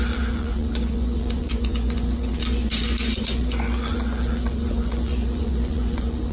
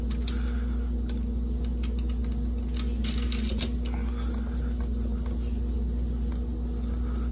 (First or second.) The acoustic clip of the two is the second